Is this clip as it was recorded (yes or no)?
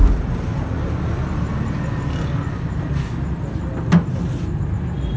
yes